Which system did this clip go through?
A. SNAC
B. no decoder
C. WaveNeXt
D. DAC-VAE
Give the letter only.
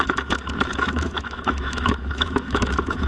D